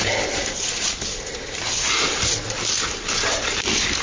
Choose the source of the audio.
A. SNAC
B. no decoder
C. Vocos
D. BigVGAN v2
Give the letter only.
B